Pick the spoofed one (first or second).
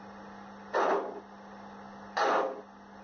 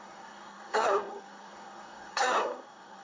second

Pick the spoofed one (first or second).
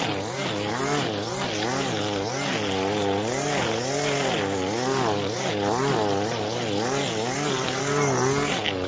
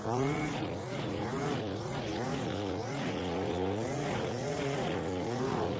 second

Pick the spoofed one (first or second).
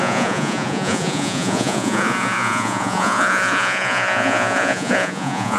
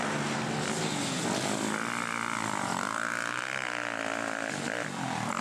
first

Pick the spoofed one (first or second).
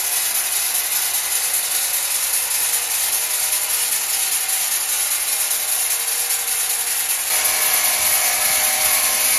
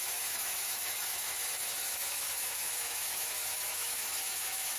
second